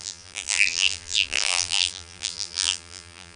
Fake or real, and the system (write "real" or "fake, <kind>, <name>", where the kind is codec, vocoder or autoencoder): fake, vocoder, BigVGAN v2